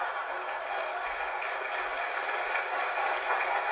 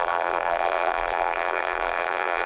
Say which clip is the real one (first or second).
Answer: first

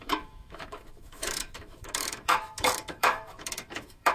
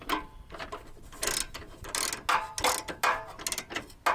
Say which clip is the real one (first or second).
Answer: second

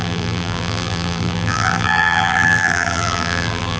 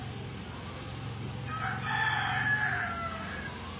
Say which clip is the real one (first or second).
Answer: second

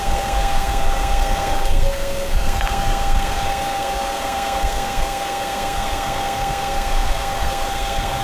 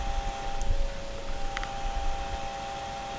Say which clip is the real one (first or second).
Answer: second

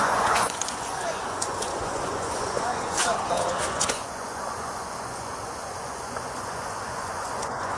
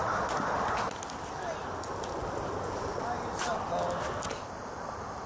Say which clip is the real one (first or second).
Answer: second